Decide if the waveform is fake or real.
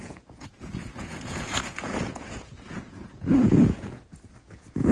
fake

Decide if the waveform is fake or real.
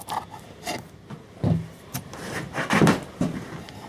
real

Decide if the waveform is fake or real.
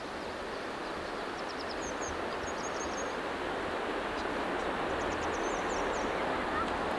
real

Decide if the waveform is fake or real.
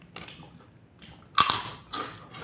real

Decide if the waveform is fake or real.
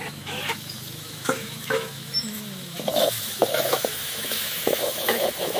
fake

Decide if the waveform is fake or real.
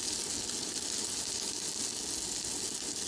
real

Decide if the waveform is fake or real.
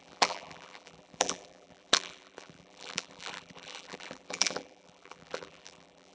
fake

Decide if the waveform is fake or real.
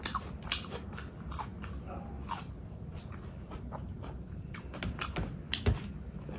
real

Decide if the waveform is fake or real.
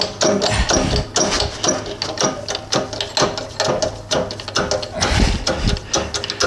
real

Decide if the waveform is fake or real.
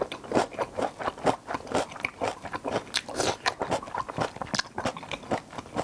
real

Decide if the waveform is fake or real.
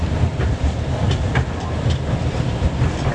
fake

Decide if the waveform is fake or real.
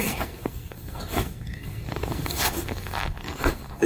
fake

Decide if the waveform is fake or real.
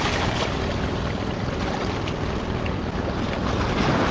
real